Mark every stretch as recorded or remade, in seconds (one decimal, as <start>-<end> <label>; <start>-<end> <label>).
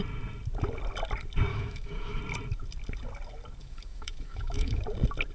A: 0.0-1.5 recorded; 1.5-2.2 remade; 2.2-3.6 recorded; 3.6-4.8 remade; 4.8-5.3 recorded